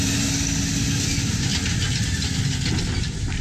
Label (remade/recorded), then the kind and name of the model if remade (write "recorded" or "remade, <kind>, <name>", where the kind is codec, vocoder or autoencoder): recorded